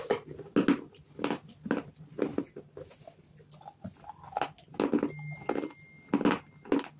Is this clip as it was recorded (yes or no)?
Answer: yes